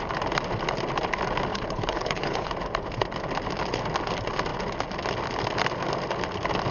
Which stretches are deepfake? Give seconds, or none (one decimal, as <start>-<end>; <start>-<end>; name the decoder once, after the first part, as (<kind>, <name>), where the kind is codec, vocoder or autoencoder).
1.5-2.5 (codec, HILCodec)